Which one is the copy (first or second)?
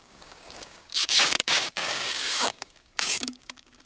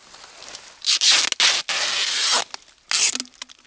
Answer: first